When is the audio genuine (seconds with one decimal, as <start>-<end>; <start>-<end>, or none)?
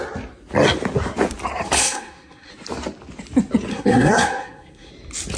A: 0.0-1.8; 2.5-3.7; 4.9-5.4